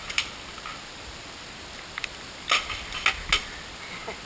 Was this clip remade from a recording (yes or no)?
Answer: no